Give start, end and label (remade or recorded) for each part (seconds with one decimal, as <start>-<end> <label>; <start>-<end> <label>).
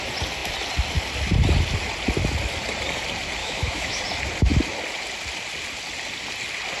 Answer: 0.0-3.4 recorded; 3.4-4.0 remade; 4.0-6.8 recorded